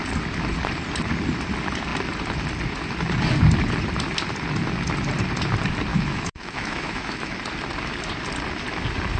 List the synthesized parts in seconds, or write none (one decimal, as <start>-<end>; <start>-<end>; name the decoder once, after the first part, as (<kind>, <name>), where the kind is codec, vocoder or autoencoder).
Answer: 5.9-7.3 (autoencoder, DAC-VAE)